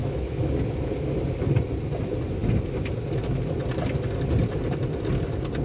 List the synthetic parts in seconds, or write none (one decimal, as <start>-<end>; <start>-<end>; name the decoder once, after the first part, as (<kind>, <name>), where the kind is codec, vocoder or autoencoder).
0.0-0.5 (autoencoder, DAC-VAE)